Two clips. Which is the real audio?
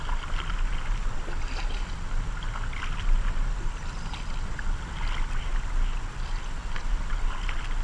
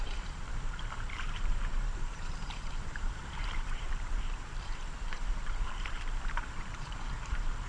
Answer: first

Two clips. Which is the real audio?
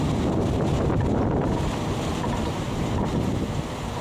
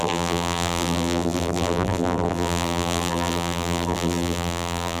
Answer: first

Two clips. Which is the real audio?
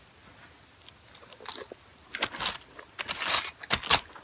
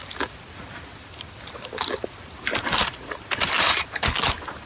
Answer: first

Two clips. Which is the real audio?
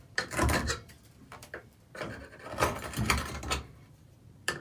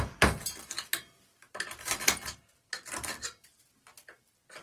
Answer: second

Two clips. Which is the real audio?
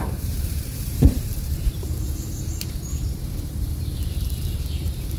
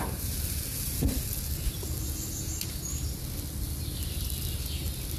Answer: second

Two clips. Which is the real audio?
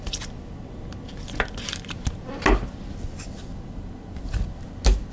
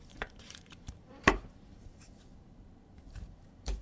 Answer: first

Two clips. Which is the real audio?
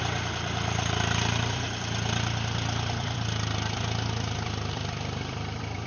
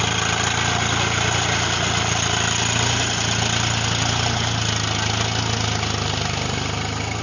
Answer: second